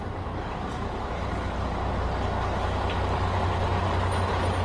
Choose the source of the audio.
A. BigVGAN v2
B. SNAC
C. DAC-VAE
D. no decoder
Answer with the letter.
A